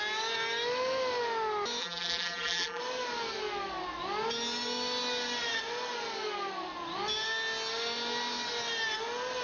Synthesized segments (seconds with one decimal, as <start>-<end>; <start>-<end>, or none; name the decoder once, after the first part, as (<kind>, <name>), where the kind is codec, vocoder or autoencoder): 1.8-2.8 (vocoder, BigVGAN v2)